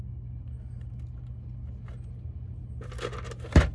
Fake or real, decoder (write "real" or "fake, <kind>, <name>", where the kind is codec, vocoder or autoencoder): real